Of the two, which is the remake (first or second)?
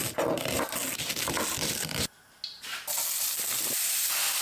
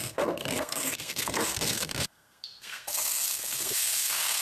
second